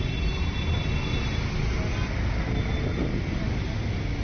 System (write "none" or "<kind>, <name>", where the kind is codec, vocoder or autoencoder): none